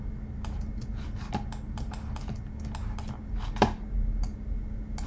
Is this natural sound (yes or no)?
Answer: yes